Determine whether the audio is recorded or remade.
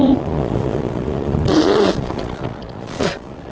remade